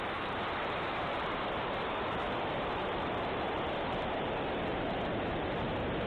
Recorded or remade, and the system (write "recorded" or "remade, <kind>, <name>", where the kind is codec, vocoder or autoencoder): remade, vocoder, BigVGAN v2